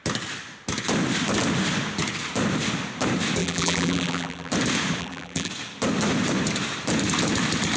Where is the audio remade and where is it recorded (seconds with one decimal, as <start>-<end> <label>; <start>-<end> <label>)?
0.0-3.4 recorded; 3.4-4.5 remade; 4.5-5.0 recorded; 5.0-5.5 remade; 5.5-7.8 recorded